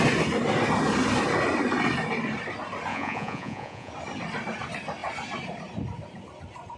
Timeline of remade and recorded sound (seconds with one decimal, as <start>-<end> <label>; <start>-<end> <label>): 0.0-2.9 recorded; 2.9-3.9 remade; 3.9-6.8 recorded